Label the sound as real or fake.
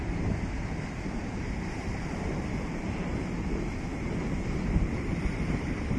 fake